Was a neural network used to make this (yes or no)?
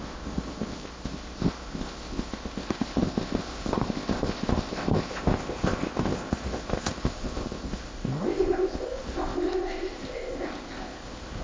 yes